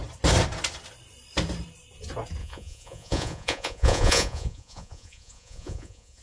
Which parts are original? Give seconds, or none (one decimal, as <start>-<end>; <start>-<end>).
0.0-2.4